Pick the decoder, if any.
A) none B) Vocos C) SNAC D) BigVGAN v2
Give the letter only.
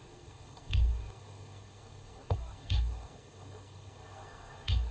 C